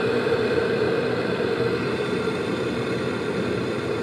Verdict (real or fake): real